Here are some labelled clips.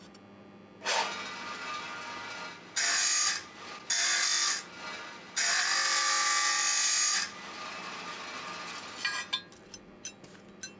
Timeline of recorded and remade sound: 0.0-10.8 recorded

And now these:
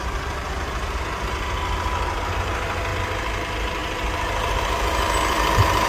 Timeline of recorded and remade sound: 0.0-2.9 remade; 2.9-3.4 recorded; 3.4-5.9 remade

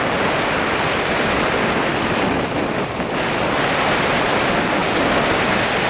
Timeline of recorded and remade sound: 0.0-1.9 remade; 1.9-2.5 recorded; 2.5-5.9 remade